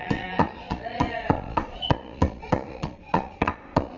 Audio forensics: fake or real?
fake